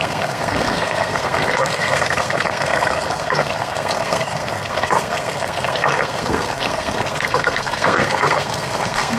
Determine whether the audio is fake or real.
fake